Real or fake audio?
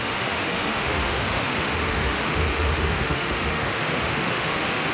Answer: fake